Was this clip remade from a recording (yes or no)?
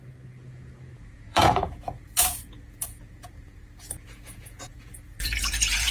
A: yes